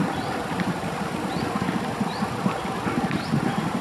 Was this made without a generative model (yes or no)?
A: yes